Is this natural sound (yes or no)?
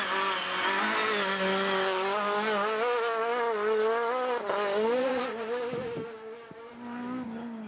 yes